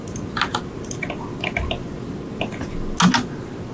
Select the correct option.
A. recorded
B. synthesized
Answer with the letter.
A